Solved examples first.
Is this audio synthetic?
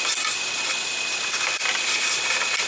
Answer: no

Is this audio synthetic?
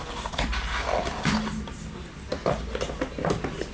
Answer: no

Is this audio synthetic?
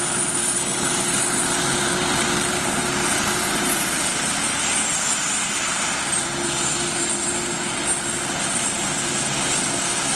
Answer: no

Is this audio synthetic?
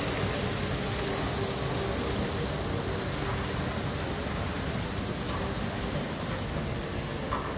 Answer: no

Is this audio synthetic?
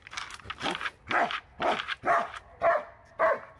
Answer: no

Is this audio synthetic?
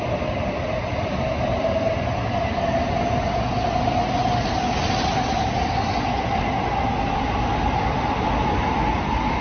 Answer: no